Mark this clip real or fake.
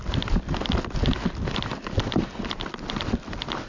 real